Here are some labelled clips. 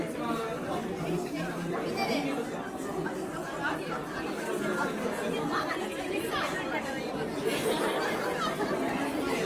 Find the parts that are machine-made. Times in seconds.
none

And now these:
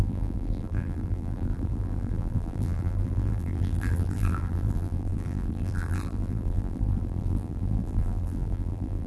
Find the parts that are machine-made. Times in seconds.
0.0-9.1 (vocoder, BigVGAN v2)

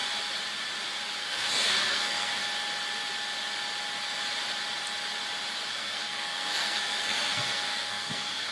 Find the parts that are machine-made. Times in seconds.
1.2-2.4 (codec, SNAC); 5.7-8.5

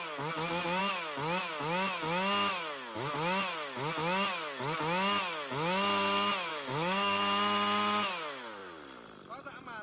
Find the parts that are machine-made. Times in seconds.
6.5-7.2 (codec, DAC)

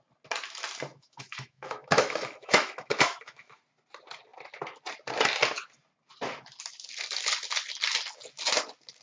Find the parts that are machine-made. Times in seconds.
0.9-3.6 (autoencoder, DAC-VAE)